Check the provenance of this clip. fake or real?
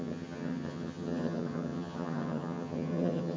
fake